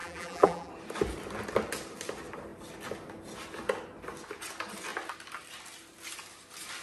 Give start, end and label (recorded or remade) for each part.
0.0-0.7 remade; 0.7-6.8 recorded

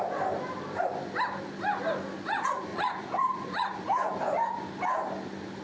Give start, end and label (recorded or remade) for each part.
0.0-2.7 recorded; 2.7-4.1 remade; 4.1-5.6 recorded

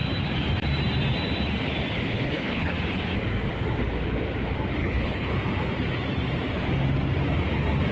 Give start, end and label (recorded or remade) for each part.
0.0-2.1 recorded; 2.1-2.7 remade; 2.7-4.8 recorded; 4.8-5.3 remade; 5.3-7.9 recorded

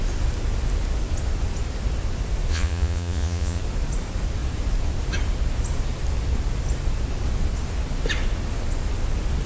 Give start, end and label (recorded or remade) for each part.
0.0-2.5 recorded; 2.5-3.6 remade; 3.6-9.5 recorded